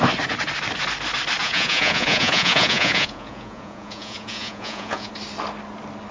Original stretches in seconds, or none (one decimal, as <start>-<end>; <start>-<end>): 0.0-1.4; 5.1-6.1